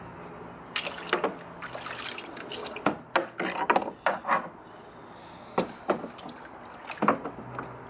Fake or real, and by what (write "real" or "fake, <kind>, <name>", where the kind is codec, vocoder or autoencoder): real